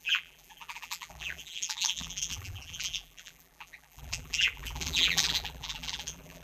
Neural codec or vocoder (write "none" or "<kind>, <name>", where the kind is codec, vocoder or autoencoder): vocoder, BigVGAN v2